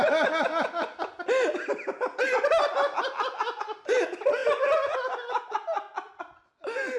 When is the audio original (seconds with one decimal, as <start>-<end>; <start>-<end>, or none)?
0.0-7.0